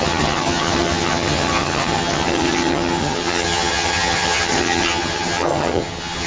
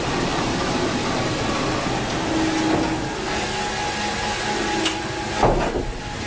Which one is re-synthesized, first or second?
first